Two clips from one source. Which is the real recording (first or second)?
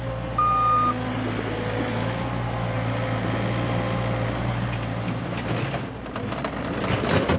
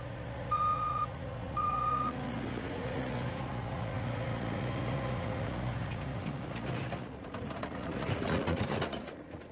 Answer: first